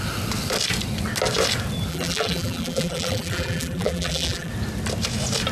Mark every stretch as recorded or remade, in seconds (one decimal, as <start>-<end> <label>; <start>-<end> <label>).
0.0-1.9 recorded; 1.9-4.5 remade; 4.5-5.5 recorded